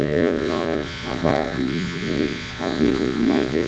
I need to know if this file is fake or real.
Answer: fake